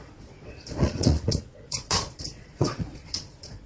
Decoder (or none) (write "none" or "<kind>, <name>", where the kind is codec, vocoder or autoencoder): vocoder, Vocos